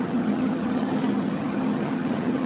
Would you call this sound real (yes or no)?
no